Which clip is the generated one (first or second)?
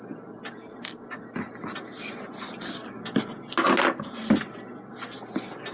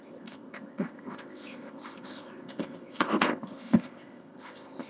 second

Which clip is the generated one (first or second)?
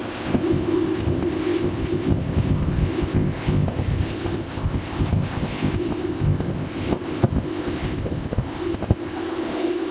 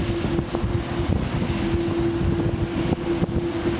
first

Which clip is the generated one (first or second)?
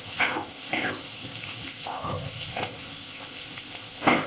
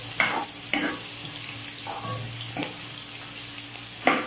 first